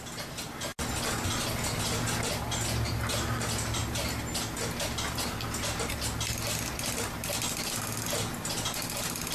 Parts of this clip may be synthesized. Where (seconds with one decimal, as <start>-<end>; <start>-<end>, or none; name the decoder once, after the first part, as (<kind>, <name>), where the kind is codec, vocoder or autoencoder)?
none